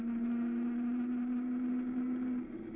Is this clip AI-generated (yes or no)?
no